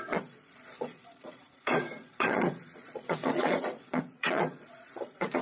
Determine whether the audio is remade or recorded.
remade